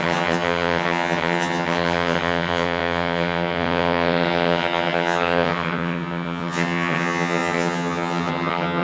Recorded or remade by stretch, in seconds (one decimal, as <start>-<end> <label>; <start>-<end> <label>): 0.0-8.8 remade